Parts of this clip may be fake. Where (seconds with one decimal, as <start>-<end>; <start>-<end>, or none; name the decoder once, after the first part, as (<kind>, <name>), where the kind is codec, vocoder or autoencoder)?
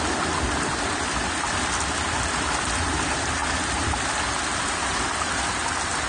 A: none